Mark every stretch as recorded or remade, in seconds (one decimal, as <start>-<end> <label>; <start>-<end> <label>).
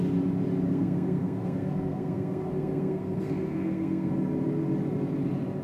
0.0-0.7 recorded; 0.7-4.1 remade; 4.1-5.6 recorded